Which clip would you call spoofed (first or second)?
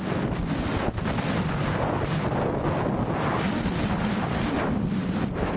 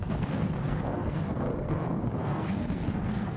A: second